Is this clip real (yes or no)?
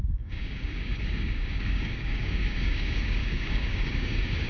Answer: no